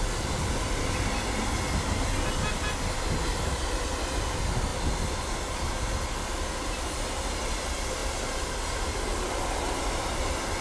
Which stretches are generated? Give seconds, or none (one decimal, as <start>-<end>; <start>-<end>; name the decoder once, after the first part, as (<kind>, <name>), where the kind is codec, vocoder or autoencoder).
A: none